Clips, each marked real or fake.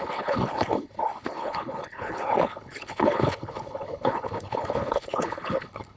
fake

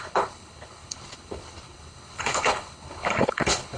fake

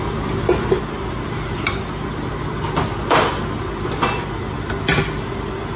real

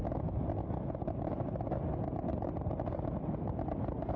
real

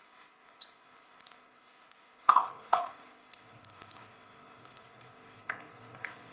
fake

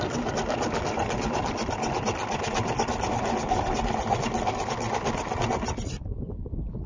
real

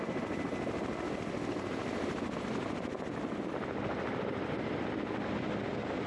real